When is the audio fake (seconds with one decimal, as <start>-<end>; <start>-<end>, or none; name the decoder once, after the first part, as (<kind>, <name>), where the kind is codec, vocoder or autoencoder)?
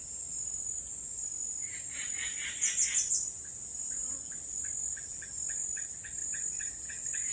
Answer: none